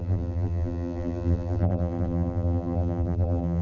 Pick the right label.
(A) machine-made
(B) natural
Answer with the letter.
A